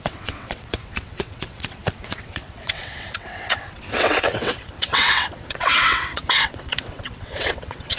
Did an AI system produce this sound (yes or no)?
yes